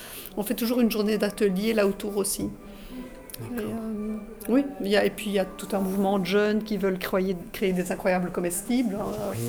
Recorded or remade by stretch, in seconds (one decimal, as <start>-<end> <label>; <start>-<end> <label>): 0.0-2.7 remade; 2.7-6.7 recorded; 6.7-9.5 remade